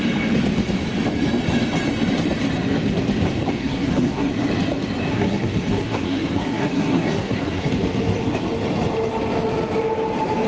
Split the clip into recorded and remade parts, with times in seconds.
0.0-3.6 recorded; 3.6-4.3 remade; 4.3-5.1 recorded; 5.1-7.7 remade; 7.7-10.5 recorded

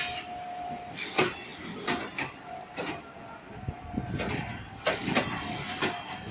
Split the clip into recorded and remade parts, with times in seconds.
0.0-6.3 recorded